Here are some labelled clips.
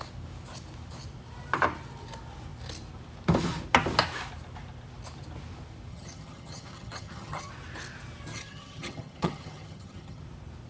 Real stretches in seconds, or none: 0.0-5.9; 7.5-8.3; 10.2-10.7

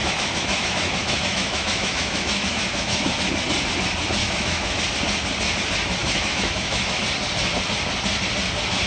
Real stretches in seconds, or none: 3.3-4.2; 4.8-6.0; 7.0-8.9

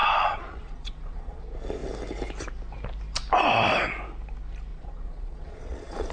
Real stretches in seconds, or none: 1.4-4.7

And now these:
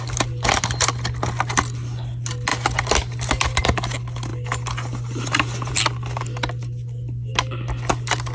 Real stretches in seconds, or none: 0.0-8.3

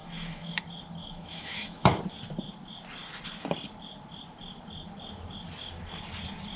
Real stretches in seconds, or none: 0.6-1.0; 2.0-6.6

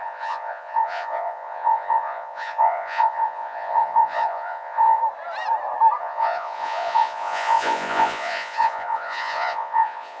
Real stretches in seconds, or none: 5.0-6.0

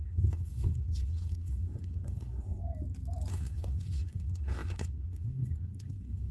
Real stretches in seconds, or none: 2.6-3.3